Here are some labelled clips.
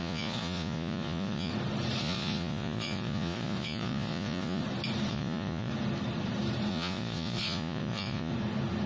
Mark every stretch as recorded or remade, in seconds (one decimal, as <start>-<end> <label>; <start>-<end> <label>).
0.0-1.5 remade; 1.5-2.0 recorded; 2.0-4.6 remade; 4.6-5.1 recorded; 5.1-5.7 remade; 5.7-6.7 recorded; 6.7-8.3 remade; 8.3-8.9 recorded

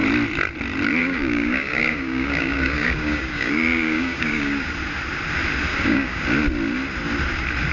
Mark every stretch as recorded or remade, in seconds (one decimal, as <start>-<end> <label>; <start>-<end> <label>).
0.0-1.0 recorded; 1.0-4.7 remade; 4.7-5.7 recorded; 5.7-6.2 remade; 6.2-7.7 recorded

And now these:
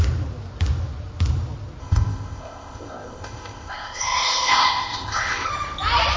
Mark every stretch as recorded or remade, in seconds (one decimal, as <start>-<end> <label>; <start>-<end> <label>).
0.0-1.8 recorded; 1.8-5.5 remade; 5.5-6.2 recorded

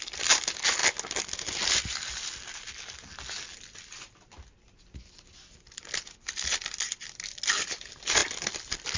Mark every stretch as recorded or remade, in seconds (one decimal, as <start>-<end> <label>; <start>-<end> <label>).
0.0-9.0 recorded

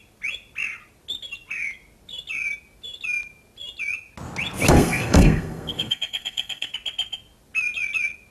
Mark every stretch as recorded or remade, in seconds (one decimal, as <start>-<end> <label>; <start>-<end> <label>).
0.0-4.7 recorded; 4.7-6.7 remade; 6.7-8.3 recorded

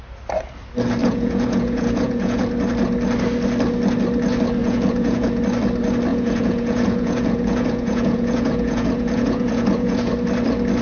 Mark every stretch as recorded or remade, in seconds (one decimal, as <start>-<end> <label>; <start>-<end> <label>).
0.0-1.0 recorded; 1.0-2.4 remade; 2.4-4.6 recorded; 4.6-5.4 remade; 5.4-6.1 recorded; 6.1-10.1 remade; 10.1-10.8 recorded

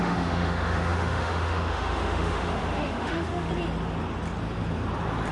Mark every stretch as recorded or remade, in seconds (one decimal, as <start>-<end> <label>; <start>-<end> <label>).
0.0-3.5 remade; 3.5-5.3 recorded

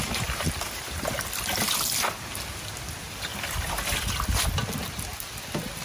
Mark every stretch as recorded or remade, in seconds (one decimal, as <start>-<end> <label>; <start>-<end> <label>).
0.0-0.8 remade; 0.8-5.8 recorded